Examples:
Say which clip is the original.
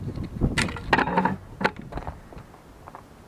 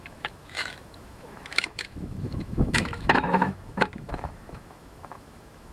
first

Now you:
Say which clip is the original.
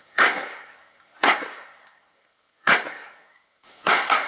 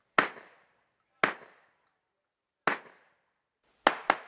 second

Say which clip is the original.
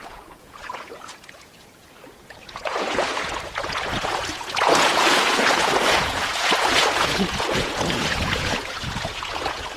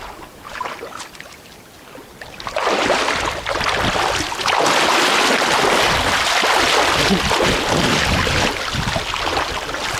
second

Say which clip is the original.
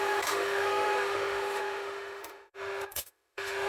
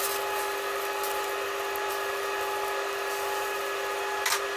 second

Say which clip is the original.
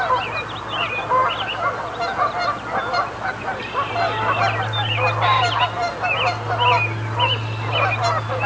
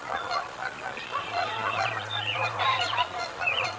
first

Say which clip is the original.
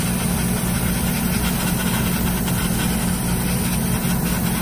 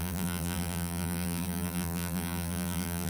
first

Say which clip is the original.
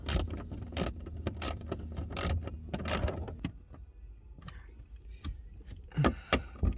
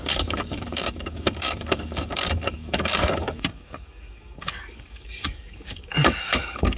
first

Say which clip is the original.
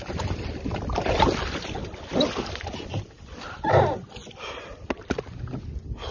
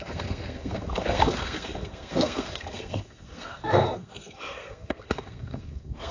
first